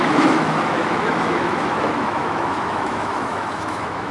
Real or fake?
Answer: fake